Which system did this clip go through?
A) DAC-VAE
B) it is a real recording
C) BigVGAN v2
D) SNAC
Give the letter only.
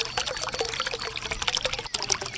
B